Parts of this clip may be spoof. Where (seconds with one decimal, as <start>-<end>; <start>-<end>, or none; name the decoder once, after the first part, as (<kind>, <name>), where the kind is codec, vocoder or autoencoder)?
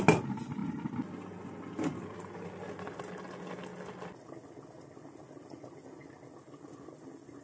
none